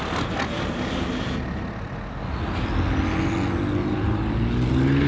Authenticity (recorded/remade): recorded